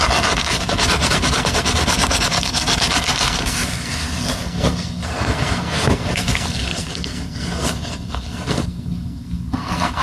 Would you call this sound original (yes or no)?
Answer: no